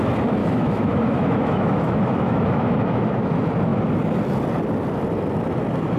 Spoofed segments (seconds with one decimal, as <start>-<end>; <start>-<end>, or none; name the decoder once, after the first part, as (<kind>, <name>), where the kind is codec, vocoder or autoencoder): 0.4-3.2 (autoencoder, DAC-VAE)